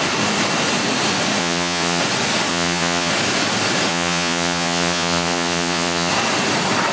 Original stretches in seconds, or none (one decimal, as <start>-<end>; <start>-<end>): 0.0-1.4; 2.0-2.5; 3.1-3.9; 6.1-6.9